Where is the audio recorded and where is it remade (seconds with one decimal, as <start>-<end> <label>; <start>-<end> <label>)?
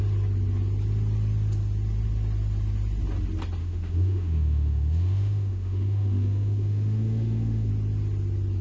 0.0-3.6 recorded; 3.6-7.7 remade; 7.7-8.6 recorded